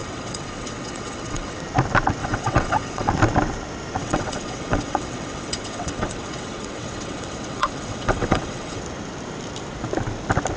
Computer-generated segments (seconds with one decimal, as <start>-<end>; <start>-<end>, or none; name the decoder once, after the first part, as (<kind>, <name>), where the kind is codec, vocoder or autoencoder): 0.0-1.6 (vocoder, WaveNeXt); 2.2-3.1; 4.0-8.8